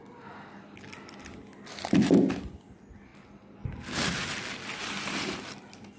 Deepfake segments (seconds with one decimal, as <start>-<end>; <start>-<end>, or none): none